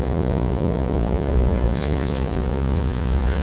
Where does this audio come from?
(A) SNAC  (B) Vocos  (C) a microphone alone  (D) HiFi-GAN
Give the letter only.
B